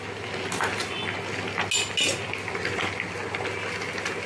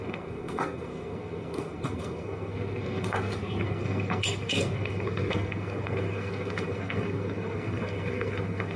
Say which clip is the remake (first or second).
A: second